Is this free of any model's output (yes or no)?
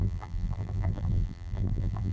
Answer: no